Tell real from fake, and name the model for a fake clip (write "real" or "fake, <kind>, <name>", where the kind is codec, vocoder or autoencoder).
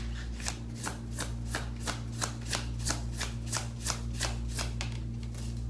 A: real